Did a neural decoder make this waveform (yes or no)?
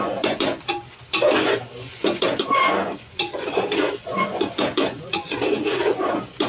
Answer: yes